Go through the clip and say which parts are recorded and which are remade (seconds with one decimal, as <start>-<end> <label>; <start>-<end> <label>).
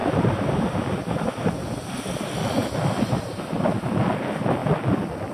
0.0-5.3 recorded